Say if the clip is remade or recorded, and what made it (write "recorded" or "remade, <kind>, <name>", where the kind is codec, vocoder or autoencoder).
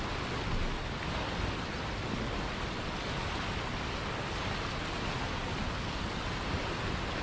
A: recorded